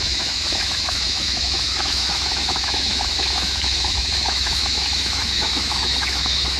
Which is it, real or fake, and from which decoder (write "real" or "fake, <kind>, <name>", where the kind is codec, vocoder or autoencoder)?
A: fake, autoencoder, DAC-VAE